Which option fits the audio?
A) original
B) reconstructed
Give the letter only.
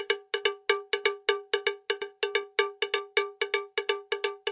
A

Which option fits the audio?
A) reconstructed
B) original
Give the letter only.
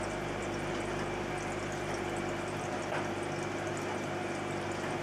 B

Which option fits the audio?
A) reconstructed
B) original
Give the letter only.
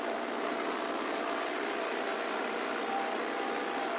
A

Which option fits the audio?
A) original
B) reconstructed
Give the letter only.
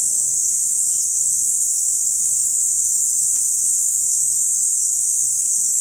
B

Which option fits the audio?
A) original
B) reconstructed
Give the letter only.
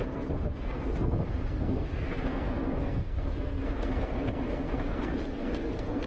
B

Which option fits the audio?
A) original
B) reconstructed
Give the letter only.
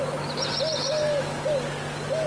A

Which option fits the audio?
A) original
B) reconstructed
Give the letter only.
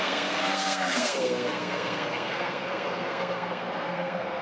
B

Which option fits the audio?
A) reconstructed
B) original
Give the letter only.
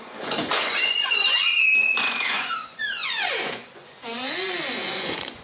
A